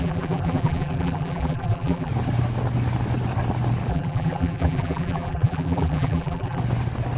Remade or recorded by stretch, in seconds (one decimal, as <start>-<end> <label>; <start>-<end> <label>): 0.0-2.1 remade; 2.1-3.9 recorded; 3.9-6.6 remade; 6.6-7.2 recorded